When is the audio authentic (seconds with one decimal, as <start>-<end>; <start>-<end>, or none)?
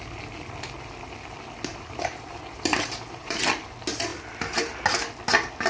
0.0-1.7; 3.5-5.7